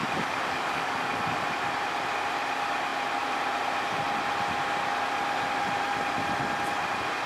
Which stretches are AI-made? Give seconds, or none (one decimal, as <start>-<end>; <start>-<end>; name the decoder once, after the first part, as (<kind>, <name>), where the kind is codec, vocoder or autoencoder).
0.0-1.3 (codec, DAC)